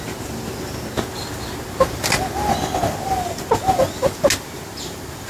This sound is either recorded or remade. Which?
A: recorded